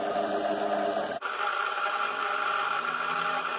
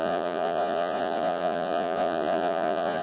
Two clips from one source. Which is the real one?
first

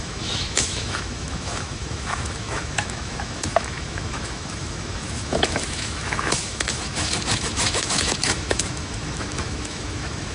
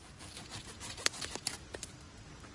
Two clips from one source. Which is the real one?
second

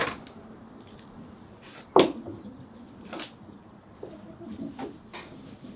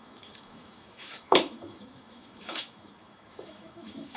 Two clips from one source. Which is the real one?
first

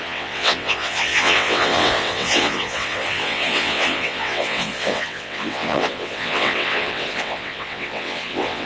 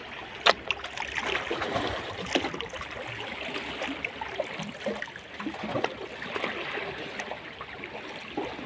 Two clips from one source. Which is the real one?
second